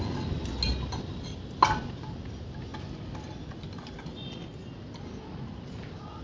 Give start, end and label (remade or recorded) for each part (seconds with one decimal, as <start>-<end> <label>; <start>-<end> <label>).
0.0-6.2 recorded